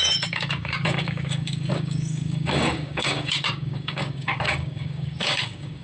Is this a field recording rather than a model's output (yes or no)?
no